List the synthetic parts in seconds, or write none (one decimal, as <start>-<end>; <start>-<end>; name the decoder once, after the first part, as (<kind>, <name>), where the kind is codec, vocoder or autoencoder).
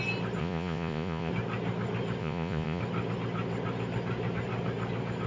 0.4-1.3 (vocoder, Vocos); 2.2-2.8